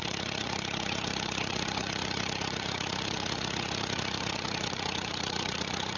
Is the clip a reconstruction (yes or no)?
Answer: yes